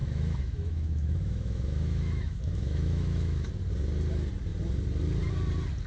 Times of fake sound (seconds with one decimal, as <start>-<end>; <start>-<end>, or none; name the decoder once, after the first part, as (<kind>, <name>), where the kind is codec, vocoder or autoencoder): 0.0-3.5 (autoencoder, DAC-VAE)